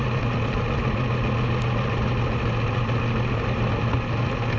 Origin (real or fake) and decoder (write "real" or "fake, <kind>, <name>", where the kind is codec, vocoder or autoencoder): real